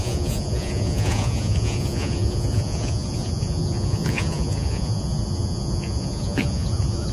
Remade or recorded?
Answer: remade